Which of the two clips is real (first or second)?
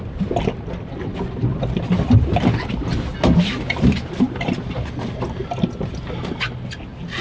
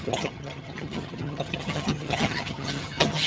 first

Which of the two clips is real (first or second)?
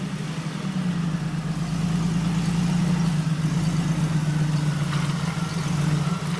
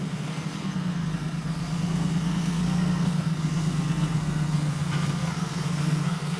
first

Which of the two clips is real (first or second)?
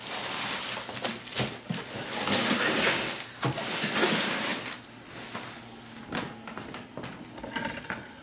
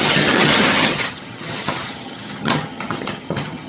first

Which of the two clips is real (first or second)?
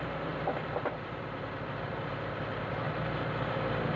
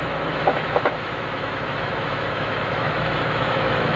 first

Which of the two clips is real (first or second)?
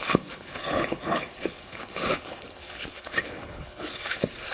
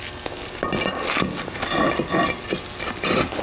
second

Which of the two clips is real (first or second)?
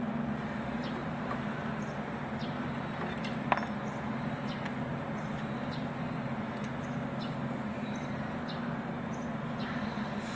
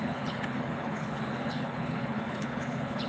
first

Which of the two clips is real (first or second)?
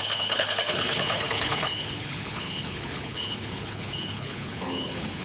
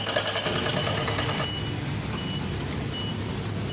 second